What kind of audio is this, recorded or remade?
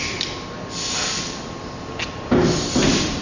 recorded